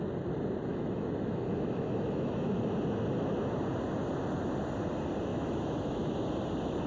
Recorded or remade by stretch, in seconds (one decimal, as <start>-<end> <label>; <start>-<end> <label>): 0.0-0.7 recorded; 0.7-2.5 remade; 2.5-5.3 recorded; 5.3-6.1 remade; 6.1-6.9 recorded